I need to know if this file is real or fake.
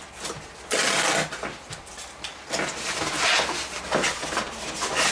real